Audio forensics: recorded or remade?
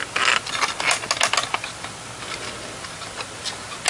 recorded